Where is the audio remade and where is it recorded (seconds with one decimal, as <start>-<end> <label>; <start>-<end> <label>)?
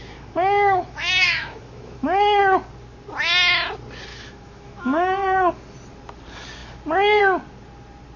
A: 0.0-2.4 remade; 2.4-4.1 recorded; 4.1-5.5 remade; 5.5-8.2 recorded